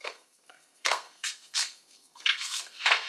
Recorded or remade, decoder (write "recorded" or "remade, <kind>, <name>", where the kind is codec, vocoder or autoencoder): remade, codec, SNAC